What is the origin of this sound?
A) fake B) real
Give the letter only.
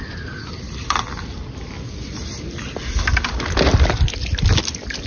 B